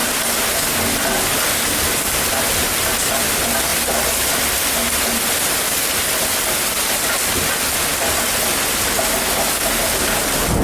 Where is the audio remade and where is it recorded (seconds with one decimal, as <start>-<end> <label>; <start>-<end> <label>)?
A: 0.0-10.6 recorded